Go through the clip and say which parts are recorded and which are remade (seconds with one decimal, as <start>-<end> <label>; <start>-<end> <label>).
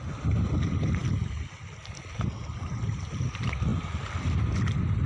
0.0-5.1 recorded